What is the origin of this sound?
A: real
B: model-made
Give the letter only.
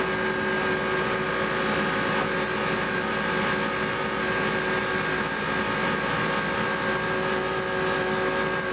A